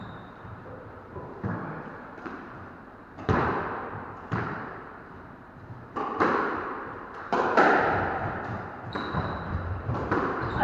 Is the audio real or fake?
fake